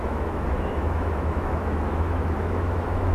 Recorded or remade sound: remade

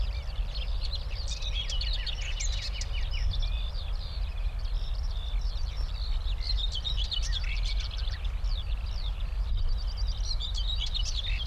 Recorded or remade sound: recorded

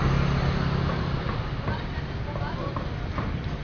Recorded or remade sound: recorded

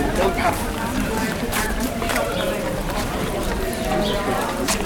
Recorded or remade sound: remade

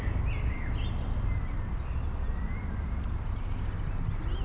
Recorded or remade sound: recorded